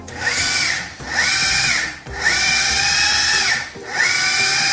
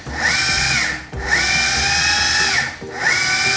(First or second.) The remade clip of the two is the first